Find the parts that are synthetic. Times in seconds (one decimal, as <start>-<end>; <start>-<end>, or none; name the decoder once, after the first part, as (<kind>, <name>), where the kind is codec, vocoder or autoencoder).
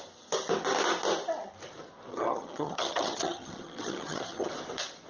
2.1-4.5 (vocoder, HiFi-GAN)